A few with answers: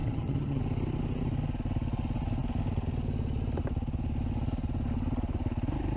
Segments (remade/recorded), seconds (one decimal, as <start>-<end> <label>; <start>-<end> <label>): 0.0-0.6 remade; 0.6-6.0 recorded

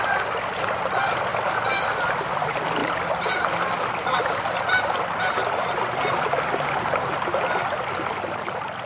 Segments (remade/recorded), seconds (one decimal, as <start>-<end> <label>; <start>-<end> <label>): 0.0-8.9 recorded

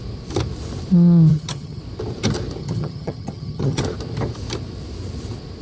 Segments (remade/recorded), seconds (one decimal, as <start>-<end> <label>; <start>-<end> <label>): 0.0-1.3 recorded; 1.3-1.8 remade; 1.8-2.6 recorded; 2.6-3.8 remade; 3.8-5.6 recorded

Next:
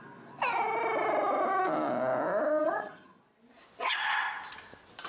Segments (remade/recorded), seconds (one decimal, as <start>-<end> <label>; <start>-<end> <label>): 0.0-2.6 recorded; 2.6-3.2 remade; 3.2-5.1 recorded

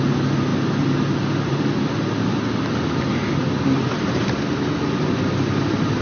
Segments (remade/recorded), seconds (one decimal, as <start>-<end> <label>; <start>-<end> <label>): 0.0-6.0 recorded

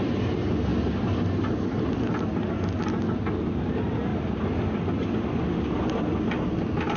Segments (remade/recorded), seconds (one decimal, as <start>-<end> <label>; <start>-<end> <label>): 0.0-7.0 recorded